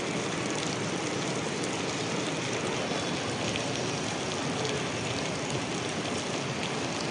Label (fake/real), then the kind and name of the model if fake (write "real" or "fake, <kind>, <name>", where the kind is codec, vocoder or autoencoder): real